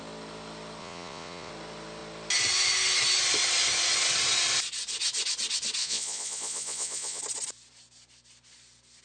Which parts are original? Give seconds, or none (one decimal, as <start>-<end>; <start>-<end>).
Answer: 0.0-0.8; 1.5-5.8; 7.2-9.0